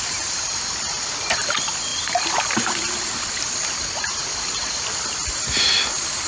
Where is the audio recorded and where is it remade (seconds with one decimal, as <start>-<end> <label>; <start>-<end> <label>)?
0.0-6.3 recorded